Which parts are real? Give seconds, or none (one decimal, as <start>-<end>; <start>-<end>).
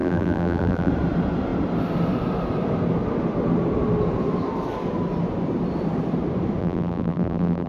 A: 0.9-6.6